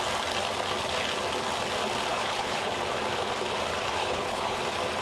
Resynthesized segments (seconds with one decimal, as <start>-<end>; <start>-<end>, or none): 2.1-2.7; 4.0-4.6